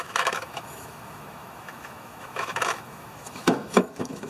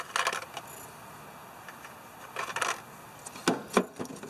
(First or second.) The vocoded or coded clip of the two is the first